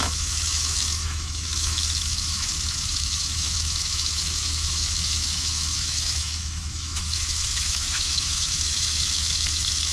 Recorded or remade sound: remade